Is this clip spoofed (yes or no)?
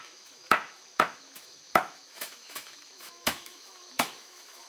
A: yes